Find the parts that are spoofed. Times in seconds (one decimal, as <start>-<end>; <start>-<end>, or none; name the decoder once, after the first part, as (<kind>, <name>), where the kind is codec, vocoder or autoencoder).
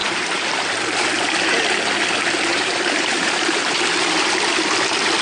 0.0-0.8 (vocoder, BigVGAN v2); 2.5-3.8